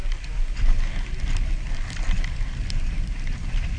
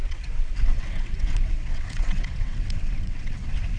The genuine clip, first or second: first